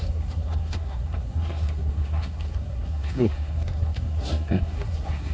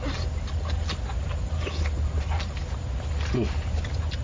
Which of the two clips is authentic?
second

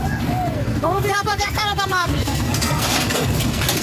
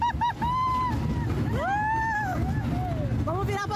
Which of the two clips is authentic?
second